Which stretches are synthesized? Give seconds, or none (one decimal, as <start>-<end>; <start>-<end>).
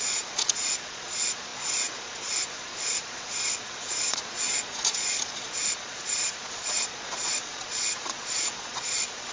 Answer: 0.0-9.3